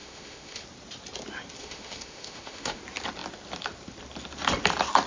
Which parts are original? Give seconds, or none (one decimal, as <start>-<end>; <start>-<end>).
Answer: 0.6-1.6; 2.8-5.1